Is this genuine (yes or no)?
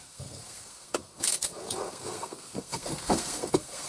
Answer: no